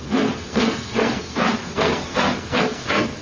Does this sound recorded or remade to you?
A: remade